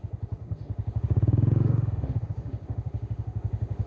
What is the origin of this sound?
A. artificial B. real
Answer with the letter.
A